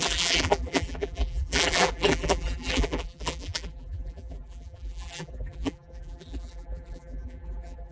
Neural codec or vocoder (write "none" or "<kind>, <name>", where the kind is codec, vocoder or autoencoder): vocoder, BigVGAN v2